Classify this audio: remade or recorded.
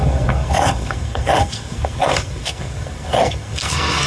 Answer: remade